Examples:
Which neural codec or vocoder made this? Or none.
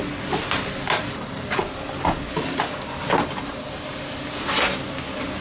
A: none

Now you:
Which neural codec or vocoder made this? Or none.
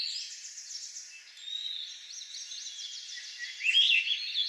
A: none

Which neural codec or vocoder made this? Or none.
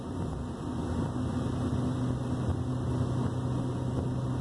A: none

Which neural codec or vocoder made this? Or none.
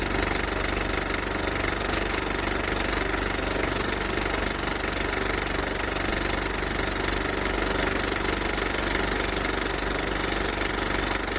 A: none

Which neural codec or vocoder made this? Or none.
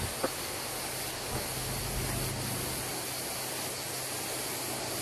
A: none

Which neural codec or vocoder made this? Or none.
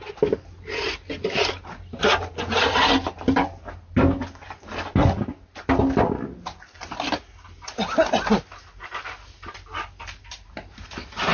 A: none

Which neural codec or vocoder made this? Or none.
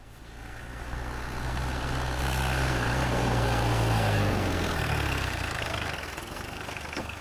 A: codec, SNAC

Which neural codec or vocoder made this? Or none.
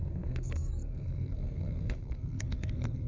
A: codec, SNAC